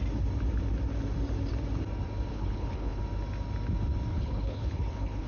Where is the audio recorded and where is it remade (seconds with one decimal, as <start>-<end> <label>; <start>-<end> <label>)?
0.0-2.3 recorded; 2.3-3.0 remade; 3.0-4.1 recorded; 4.1-5.3 remade

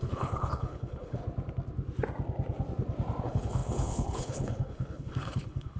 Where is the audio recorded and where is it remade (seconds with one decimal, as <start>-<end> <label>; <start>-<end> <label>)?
0.0-1.2 remade; 1.2-3.2 recorded; 3.2-5.8 remade

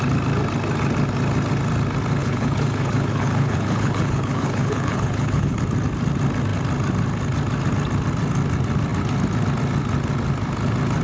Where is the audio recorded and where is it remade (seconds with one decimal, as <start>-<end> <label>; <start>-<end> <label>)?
0.0-2.2 recorded; 2.2-5.6 remade; 5.6-11.0 recorded

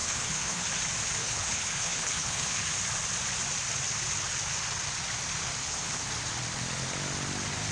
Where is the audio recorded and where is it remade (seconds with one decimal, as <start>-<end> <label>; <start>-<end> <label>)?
0.0-0.7 remade; 0.7-1.2 recorded; 1.2-2.8 remade; 2.8-5.6 recorded; 5.6-6.1 remade; 6.1-7.7 recorded

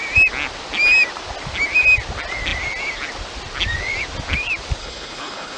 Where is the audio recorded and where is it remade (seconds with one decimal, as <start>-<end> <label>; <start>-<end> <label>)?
0.0-4.8 recorded; 4.8-5.6 remade

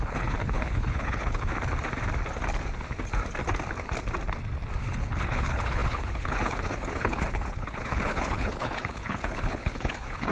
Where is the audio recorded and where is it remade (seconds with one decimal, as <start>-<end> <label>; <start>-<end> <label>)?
0.0-1.5 remade; 1.5-4.8 recorded; 4.8-10.3 remade